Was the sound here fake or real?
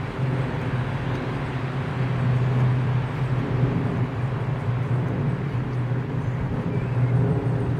real